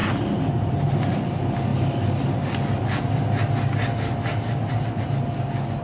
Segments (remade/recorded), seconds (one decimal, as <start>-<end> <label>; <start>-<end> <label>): 0.0-5.8 recorded